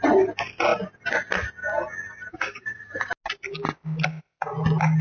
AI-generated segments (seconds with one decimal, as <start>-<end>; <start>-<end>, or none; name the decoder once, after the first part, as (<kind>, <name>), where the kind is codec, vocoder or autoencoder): 2.3-3.1 (codec, DAC)